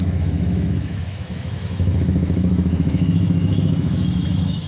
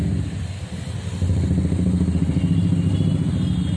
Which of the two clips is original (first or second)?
second